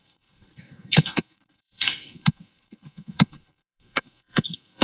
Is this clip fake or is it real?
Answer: fake